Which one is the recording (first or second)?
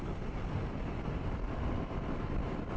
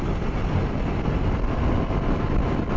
second